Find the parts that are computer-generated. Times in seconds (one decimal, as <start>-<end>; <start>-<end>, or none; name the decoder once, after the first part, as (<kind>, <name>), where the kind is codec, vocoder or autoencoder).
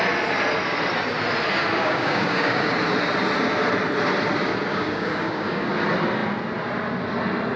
1.8-2.8 (codec, DAC); 4.7-5.7